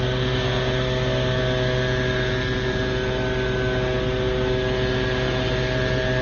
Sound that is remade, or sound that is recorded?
recorded